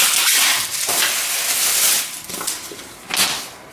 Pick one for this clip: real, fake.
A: real